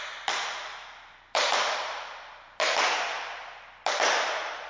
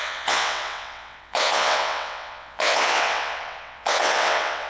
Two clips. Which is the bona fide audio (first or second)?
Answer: first